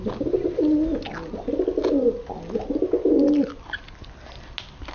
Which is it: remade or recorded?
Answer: recorded